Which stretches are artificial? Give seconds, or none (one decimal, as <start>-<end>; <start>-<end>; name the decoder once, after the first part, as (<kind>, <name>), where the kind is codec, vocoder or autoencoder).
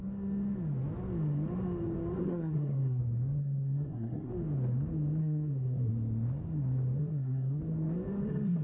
2.2-3.0 (codec, SNAC); 3.4-4.3; 5.2-5.9; 7.0-7.6